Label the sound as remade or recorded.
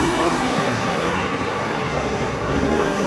remade